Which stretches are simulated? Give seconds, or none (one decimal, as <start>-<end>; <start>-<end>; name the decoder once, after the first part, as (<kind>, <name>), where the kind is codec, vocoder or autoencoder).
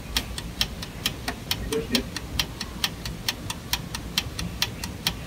none